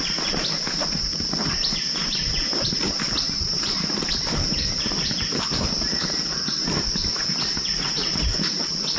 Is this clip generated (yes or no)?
no